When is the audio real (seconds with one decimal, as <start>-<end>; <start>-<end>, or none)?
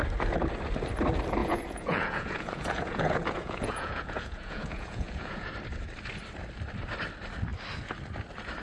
0.0-1.4; 5.5-8.6